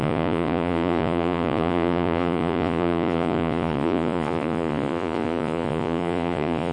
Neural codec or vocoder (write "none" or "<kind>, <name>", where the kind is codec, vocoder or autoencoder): vocoder, Vocos